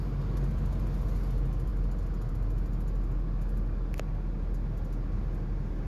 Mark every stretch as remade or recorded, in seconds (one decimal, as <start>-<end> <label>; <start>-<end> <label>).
0.0-5.9 recorded